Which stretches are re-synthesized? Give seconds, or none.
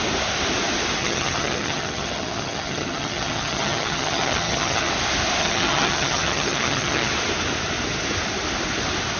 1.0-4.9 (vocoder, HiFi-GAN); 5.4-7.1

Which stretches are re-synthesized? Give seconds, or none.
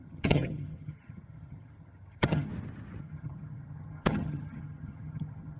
0.0-2.5 (vocoder, HiFi-GAN); 3.0-5.6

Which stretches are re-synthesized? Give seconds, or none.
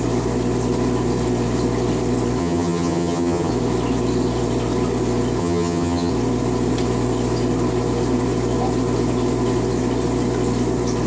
2.4-3.5 (vocoder, HiFi-GAN); 5.4-6.1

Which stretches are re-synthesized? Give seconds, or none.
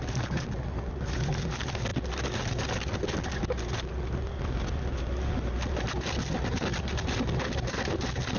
none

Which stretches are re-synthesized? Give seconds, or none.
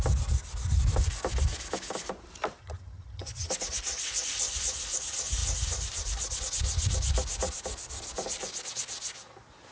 2.6-3.5 (vocoder, HiFi-GAN)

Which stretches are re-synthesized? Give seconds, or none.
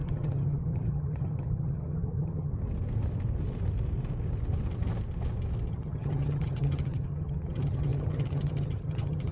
0.0-2.5 (vocoder, HiFi-GAN); 5.7-9.3